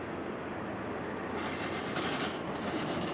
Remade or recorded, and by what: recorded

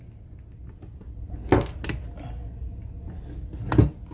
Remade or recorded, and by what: recorded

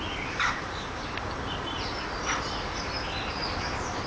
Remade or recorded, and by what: recorded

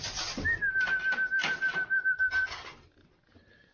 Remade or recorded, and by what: recorded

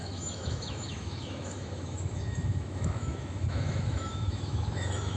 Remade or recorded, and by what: remade, autoencoder, DAC-VAE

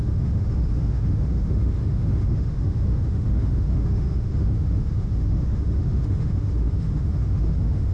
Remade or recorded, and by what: remade, autoencoder, DAC-VAE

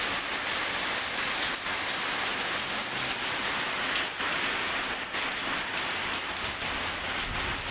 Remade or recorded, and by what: recorded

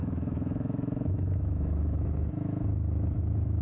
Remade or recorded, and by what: remade, autoencoder, DAC-VAE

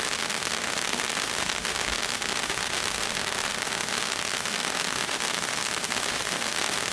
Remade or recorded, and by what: remade, autoencoder, DAC-VAE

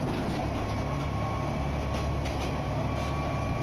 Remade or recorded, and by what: recorded